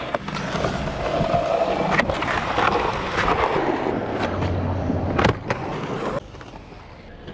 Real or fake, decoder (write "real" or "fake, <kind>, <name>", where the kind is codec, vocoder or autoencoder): real